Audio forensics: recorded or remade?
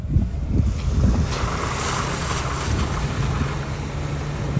recorded